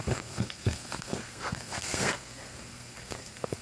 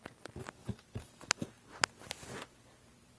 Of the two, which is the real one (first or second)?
second